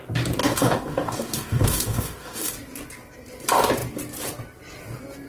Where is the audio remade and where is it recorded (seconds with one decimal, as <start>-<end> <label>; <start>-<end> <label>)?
0.0-0.4 recorded; 0.4-2.5 remade; 2.5-5.3 recorded